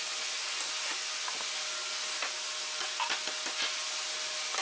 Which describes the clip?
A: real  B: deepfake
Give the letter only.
A